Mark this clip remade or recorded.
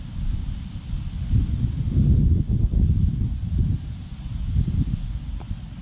recorded